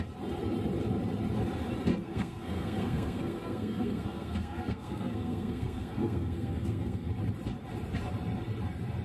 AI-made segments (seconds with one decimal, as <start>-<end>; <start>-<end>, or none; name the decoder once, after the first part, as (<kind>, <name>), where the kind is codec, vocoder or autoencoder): 1.9-7.1 (codec, SNAC)